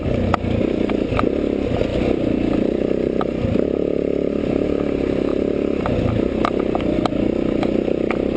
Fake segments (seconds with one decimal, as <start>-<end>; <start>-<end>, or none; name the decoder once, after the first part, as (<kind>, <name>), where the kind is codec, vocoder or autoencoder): 1.9-4.4 (vocoder, BigVGAN v2); 5.3-5.8